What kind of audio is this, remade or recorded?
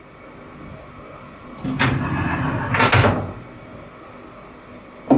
recorded